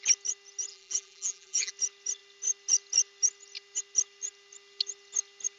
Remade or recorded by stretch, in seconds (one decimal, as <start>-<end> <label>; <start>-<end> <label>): 0.0-0.7 recorded; 0.7-1.7 remade; 1.7-5.6 recorded